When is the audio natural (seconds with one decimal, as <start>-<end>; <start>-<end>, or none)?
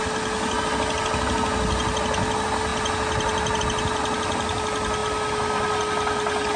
0.0-6.6